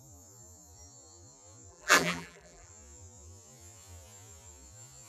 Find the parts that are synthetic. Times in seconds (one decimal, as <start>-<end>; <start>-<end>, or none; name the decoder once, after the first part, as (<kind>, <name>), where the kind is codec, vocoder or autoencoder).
1.7-2.7 (vocoder, BigVGAN v2)